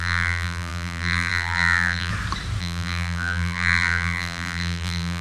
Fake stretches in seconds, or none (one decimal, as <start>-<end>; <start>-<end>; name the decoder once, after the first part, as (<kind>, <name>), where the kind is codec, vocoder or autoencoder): 0.0-2.1 (vocoder, BigVGAN v2); 2.6-5.2